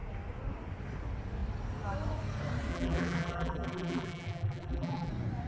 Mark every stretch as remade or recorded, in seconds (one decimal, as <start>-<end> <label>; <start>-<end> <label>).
0.0-2.7 recorded; 2.7-5.1 remade; 5.1-5.5 recorded